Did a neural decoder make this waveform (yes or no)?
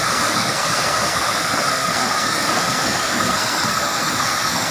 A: yes